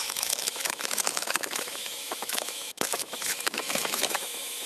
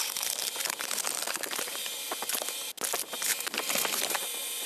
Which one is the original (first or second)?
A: second